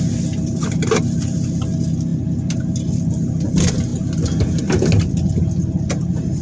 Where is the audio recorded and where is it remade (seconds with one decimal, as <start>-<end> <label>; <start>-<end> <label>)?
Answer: 0.0-6.4 recorded